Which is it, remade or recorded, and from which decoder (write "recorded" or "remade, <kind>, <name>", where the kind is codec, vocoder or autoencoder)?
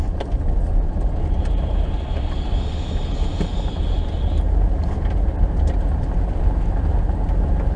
recorded